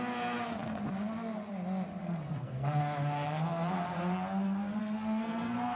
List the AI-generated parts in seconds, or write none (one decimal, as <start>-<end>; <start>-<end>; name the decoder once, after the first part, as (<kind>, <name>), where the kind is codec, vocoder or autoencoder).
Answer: 2.0-2.8 (codec, SNAC); 4.8-5.8